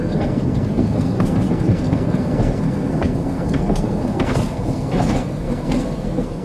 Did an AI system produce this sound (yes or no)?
yes